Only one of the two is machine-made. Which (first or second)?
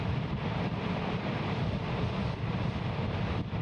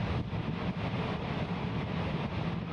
first